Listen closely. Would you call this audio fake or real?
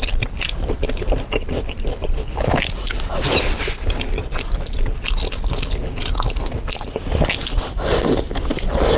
real